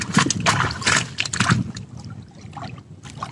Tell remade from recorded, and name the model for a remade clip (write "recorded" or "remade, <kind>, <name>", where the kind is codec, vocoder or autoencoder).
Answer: recorded